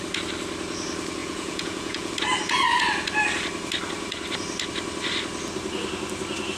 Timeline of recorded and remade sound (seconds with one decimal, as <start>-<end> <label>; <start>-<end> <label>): 0.0-1.2 recorded; 1.2-2.1 remade; 2.1-6.6 recorded